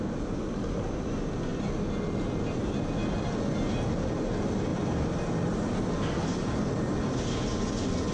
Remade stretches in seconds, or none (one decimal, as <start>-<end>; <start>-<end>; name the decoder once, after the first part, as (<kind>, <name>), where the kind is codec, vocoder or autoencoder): none